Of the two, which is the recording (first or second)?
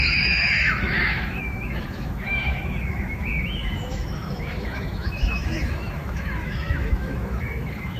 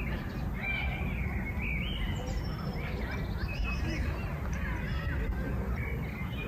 second